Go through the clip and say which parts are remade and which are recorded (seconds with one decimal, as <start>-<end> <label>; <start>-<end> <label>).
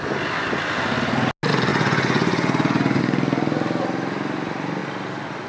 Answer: 0.0-1.7 recorded; 1.7-3.0 remade; 3.0-5.5 recorded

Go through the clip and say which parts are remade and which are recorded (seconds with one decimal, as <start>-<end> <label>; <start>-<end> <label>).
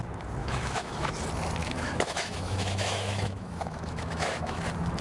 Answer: 0.0-0.4 recorded; 0.4-1.1 remade; 1.1-1.6 recorded; 1.6-4.6 remade; 4.6-5.0 recorded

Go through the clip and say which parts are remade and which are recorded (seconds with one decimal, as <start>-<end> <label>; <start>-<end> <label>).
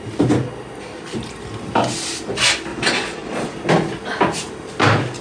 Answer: 0.0-2.7 recorded; 2.7-3.5 remade; 3.5-5.2 recorded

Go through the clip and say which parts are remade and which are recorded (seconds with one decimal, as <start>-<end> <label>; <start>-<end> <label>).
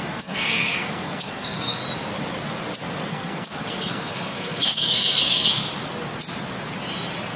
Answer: 0.0-1.8 remade; 1.8-3.1 recorded; 3.1-5.6 remade; 5.6-7.4 recorded